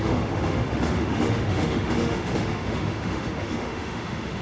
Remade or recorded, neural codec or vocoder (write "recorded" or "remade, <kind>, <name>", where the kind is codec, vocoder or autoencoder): remade, autoencoder, DAC-VAE